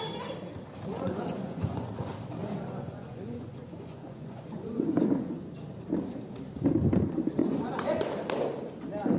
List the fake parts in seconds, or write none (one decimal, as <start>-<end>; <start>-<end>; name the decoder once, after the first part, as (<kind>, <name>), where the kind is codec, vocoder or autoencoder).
0.9-1.9 (vocoder, Vocos); 2.4-5.5; 7.4-8.0